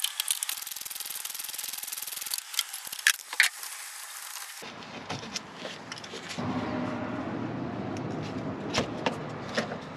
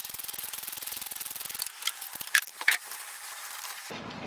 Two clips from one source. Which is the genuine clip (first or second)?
first